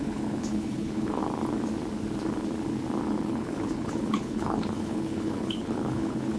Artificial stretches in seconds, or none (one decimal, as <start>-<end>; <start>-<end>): 0.0-1.2; 3.0-6.4

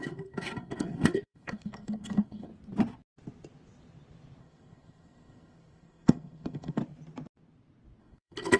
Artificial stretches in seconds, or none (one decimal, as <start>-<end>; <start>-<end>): 0.0-2.5; 4.4-6.8; 8.0-8.6

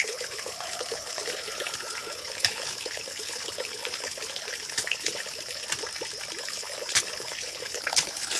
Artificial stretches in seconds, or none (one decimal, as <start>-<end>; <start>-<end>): 0.0-5.6; 6.4-8.4

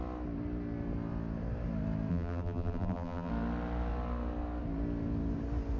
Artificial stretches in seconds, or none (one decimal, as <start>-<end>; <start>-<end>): 2.1-3.3

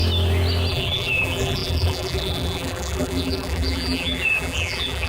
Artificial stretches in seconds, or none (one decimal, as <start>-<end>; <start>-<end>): 0.7-5.1

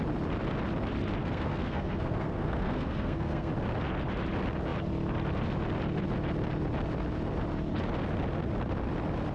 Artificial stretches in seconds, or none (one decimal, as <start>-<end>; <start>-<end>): 1.2-3.5

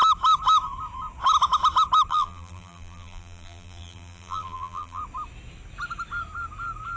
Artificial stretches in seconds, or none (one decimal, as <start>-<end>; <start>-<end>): 2.1-5.0

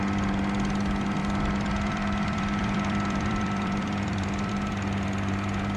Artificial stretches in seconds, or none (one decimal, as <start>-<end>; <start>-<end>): 1.2-4.5